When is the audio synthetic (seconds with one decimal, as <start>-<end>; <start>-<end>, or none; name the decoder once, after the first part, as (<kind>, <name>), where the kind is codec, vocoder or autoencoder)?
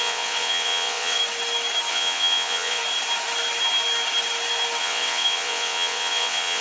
0.0-1.2 (vocoder, WaveNeXt); 1.9-2.8; 4.8-6.6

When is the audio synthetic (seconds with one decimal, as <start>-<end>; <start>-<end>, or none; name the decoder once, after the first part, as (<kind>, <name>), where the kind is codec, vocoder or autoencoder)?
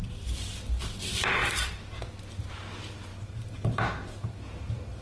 none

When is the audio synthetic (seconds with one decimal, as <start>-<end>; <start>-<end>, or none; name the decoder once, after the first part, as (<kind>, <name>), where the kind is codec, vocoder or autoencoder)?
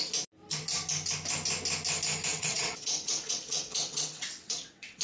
2.3-5.0 (vocoder, WaveNeXt)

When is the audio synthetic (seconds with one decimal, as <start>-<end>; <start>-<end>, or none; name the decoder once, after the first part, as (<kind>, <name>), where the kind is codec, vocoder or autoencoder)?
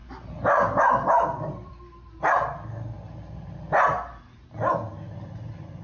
none